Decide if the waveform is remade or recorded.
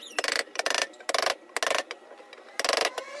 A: recorded